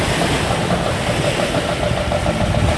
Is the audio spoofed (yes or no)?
no